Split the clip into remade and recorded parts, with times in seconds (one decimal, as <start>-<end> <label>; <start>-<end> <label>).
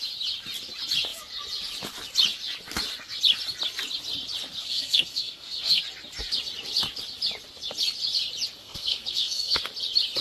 0.0-4.6 recorded; 4.6-5.8 remade; 5.8-8.6 recorded; 8.6-9.6 remade; 9.6-10.2 recorded